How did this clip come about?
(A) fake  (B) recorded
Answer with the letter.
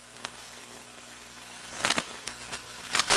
A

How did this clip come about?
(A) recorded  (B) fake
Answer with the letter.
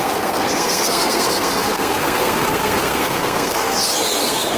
B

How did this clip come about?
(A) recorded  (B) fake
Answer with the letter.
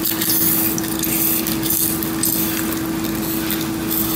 A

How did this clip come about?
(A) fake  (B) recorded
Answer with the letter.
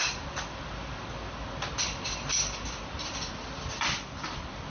B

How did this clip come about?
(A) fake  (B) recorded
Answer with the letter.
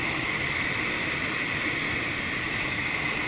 B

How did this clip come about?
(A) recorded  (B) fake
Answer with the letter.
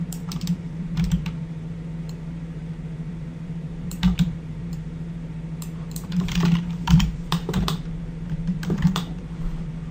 B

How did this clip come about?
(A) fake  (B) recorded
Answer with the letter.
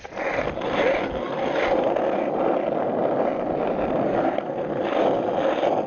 B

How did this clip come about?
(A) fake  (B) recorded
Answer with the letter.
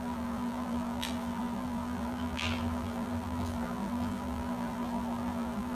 A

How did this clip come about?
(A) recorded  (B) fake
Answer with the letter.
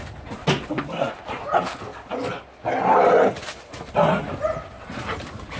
A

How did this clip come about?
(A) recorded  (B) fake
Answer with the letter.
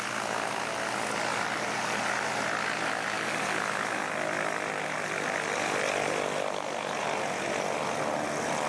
A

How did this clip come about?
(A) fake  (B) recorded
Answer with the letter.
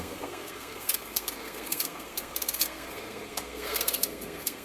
A